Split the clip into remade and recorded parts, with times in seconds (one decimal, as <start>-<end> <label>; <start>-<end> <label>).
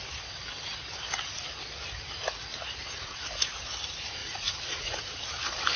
0.0-2.8 recorded; 2.8-3.7 remade; 3.7-4.2 recorded; 4.2-5.0 remade; 5.0-5.8 recorded